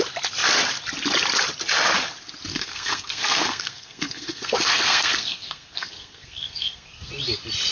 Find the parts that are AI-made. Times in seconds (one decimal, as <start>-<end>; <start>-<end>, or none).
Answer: 2.5-7.1